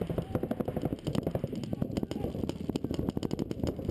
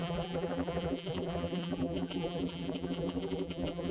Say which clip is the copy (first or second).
second